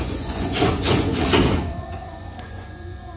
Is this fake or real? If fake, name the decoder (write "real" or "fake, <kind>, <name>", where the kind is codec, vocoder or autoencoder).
fake, vocoder, Vocos